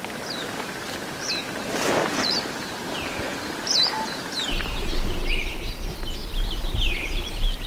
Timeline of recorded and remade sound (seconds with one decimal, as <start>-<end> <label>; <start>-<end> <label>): 0.0-7.7 remade